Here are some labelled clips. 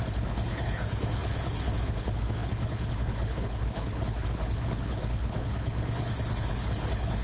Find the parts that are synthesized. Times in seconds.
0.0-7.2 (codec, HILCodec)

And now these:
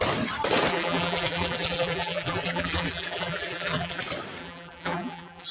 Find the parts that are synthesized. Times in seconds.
0.7-4.0 (vocoder, BigVGAN v2); 4.4-5.5

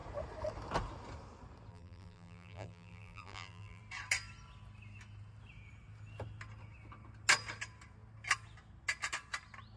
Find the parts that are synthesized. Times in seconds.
1.7-3.8 (vocoder, BigVGAN v2)